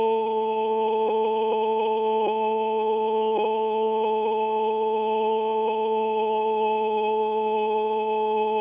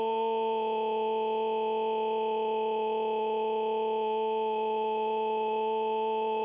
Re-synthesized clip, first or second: first